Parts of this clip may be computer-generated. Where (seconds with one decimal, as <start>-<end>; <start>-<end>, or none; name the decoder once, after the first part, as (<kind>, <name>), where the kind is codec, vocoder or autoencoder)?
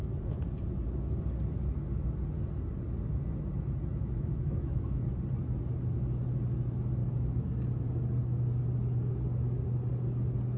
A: 3.9-5.0 (autoencoder, DAC-VAE)